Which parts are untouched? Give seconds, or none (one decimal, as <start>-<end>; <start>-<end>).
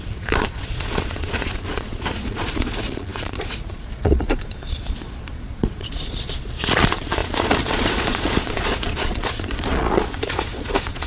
none